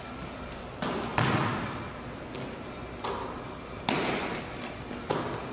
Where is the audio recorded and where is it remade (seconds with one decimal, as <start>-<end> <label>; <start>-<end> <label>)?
0.0-5.5 recorded